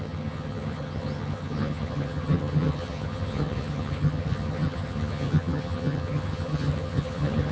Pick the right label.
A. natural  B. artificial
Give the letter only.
B